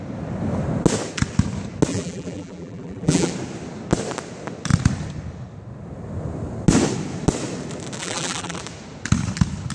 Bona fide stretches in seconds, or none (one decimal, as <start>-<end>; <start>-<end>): 0.0-1.9; 3.3-8.0; 8.6-9.7